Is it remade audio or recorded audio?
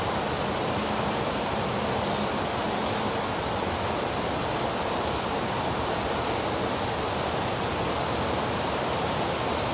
recorded